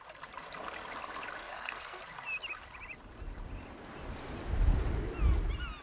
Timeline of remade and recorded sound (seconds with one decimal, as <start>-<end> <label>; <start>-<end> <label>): 0.0-1.4 recorded; 1.4-2.0 remade; 2.0-5.8 recorded